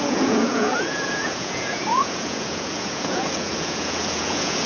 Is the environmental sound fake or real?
fake